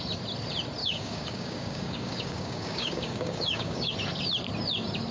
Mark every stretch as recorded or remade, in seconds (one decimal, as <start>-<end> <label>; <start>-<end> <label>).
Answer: 0.0-0.8 recorded; 0.8-3.9 remade; 3.9-5.1 recorded